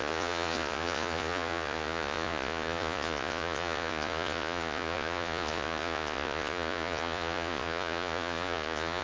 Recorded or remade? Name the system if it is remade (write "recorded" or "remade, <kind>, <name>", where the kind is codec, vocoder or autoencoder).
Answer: remade, vocoder, Vocos